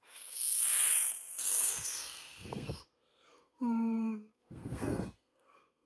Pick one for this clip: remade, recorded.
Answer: remade